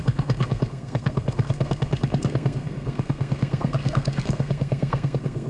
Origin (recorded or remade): remade